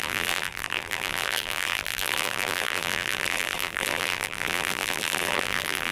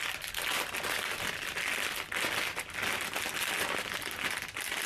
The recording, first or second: second